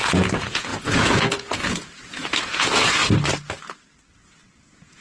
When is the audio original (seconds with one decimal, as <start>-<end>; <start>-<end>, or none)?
3.0-4.1